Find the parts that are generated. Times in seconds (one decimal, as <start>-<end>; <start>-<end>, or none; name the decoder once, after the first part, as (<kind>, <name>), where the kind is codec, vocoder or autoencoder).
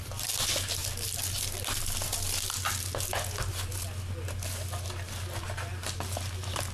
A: none